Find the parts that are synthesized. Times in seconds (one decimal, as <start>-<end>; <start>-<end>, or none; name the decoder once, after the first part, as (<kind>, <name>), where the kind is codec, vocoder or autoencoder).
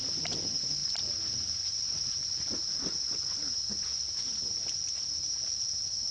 none